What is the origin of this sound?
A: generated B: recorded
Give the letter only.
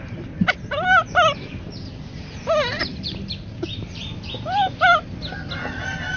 B